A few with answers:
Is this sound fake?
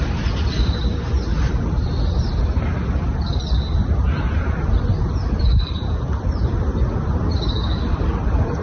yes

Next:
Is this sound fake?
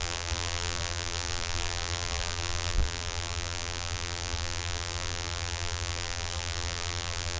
yes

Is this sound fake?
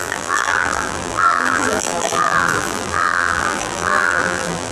yes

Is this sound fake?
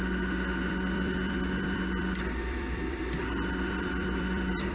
yes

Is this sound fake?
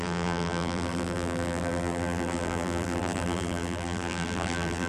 yes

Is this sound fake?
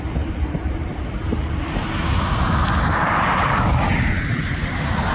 yes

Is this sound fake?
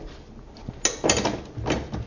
no